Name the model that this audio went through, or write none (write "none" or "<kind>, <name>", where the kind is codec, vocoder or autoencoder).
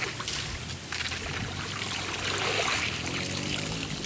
none